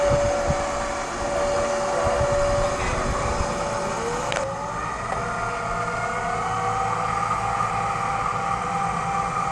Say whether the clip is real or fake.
real